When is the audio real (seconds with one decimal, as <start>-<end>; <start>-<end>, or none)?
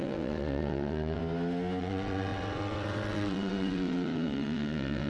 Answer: 1.2-1.8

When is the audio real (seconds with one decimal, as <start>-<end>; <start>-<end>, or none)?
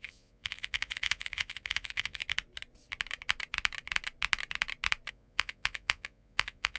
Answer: 2.2-5.1